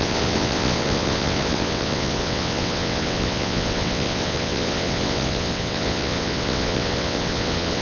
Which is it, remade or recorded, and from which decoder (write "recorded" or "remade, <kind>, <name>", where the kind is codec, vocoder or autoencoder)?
remade, vocoder, WaveNeXt